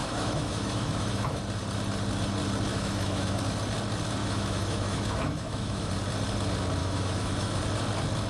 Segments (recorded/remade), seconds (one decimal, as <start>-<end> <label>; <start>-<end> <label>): 0.0-1.4 remade; 1.4-2.7 recorded; 2.7-3.4 remade; 3.4-4.2 recorded; 4.2-5.9 remade; 5.9-6.8 recorded; 6.8-7.6 remade; 7.6-8.3 recorded